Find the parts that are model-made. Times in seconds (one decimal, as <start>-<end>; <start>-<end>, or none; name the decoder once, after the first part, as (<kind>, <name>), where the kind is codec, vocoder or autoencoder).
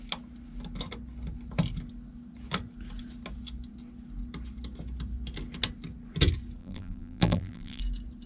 6.6-7.8 (vocoder, BigVGAN v2)